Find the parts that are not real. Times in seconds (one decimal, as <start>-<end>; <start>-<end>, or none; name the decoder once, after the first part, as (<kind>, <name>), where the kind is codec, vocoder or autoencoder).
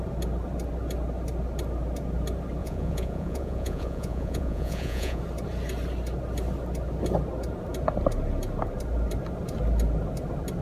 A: 2.6-5.2 (vocoder, Vocos)